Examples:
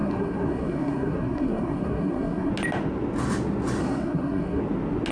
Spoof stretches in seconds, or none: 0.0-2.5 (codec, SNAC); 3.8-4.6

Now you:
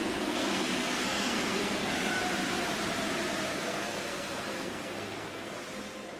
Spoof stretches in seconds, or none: 0.0-2.1 (codec, SNAC); 3.5-5.6